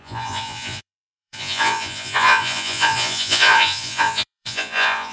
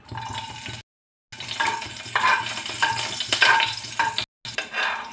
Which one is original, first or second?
second